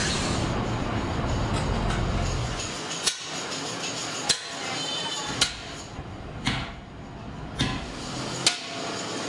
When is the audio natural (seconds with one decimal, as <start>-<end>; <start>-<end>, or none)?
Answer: 0.0-2.4; 3.2-9.3